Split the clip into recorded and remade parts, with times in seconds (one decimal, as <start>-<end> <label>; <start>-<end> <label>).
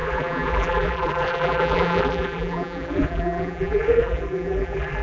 0.0-5.0 remade